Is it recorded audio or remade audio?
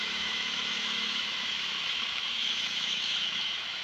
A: remade